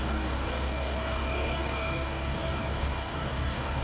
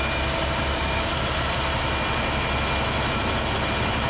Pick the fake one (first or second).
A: first